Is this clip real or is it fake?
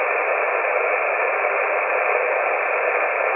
real